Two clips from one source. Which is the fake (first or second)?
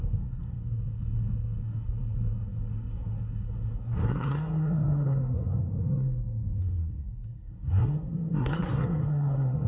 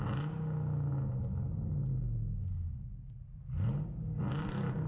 first